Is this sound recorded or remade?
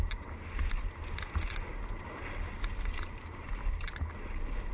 recorded